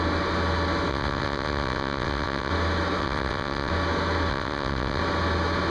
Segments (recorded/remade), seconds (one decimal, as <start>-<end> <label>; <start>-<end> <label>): 0.0-0.9 recorded; 0.9-2.5 remade; 2.5-3.0 recorded; 3.0-3.7 remade; 3.7-4.3 recorded; 4.3-5.0 remade; 5.0-5.7 recorded